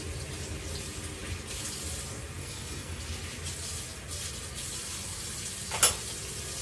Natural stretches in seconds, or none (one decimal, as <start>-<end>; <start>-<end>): 0.0-2.4; 3.0-6.6